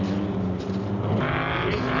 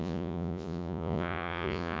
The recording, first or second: first